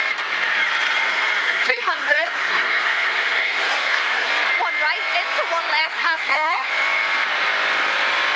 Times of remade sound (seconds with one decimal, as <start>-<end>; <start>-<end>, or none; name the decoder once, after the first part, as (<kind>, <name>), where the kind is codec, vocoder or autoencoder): 1.4-4.3 (codec, SNAC); 5.8-6.7